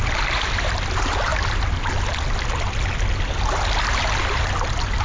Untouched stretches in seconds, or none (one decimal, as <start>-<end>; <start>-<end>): 0.0-5.0